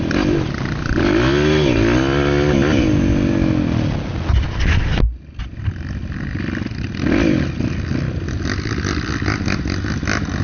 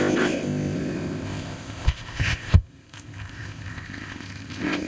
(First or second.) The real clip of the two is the first